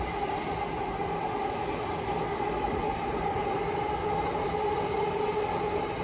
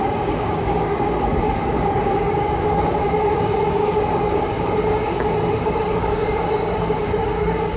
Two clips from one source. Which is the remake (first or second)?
second